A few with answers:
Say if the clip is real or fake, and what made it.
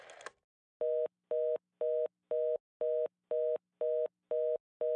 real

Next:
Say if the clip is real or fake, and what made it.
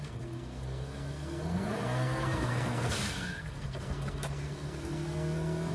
fake, codec, SNAC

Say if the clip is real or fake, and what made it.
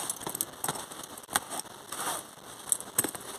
real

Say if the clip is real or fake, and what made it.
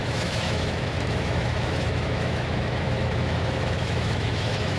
fake, autoencoder, DAC-VAE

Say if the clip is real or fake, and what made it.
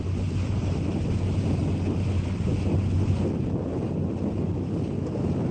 real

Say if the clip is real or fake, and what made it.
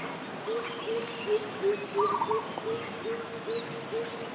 real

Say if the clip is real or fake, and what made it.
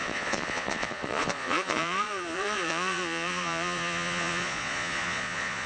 fake, vocoder, Vocos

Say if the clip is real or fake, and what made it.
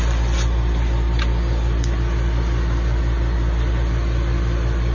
real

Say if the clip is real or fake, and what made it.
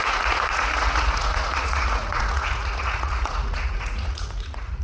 fake, vocoder, Vocos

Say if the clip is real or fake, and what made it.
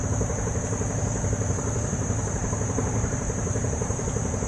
fake, vocoder, BigVGAN v2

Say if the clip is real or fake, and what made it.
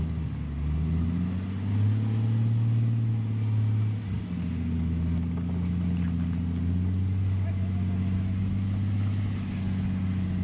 real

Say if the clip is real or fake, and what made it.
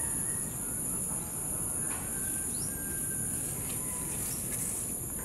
real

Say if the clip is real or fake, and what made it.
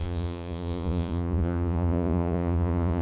fake, vocoder, Vocos